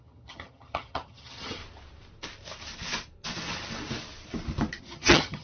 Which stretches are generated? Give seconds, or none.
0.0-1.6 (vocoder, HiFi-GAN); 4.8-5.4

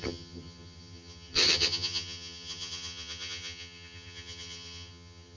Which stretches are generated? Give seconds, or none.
0.0-5.4 (vocoder, HiFi-GAN)

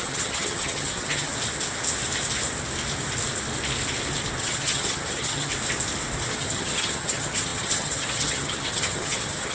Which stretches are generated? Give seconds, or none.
0.0-1.3 (vocoder, HiFi-GAN); 4.4-5.5; 6.3-9.5

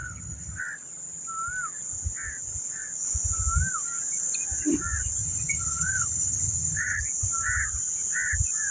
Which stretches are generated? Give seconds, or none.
0.0-0.6 (vocoder, HiFi-GAN); 5.2-7.0

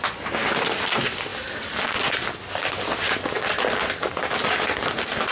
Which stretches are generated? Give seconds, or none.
none

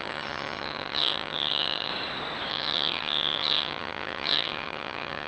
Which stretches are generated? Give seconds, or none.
0.0-1.9 (vocoder, HiFi-GAN); 2.5-5.3

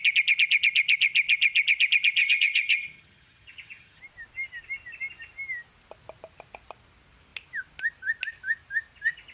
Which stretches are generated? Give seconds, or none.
2.2-4.0 (vocoder, HiFi-GAN)